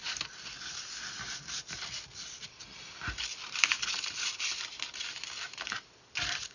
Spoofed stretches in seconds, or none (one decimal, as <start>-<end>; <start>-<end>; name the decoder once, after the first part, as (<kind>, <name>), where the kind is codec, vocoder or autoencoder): none